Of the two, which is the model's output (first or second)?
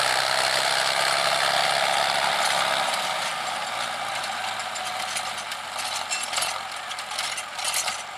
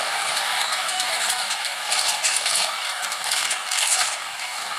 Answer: second